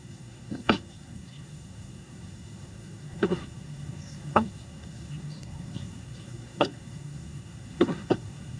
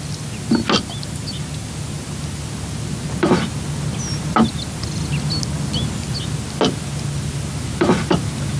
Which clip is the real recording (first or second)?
second